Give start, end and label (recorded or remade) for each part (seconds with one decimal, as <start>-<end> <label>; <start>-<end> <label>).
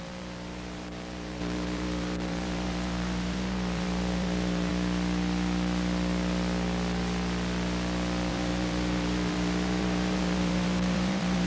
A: 0.0-4.7 remade; 4.7-8.3 recorded; 8.3-11.5 remade